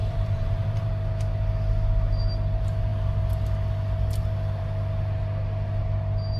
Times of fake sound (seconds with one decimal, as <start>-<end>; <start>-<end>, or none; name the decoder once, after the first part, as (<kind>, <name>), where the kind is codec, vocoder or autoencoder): 0.0-0.9 (vocoder, BigVGAN v2)